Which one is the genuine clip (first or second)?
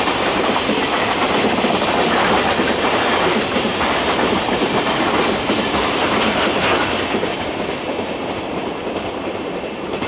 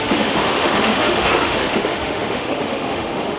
first